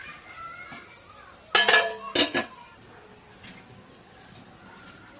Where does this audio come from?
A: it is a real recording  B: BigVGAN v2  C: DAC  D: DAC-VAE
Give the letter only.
A